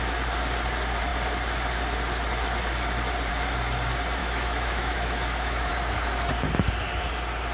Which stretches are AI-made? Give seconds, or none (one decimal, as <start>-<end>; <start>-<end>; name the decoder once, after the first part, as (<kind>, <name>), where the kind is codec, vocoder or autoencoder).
4.2-5.7 (autoencoder, DAC-VAE)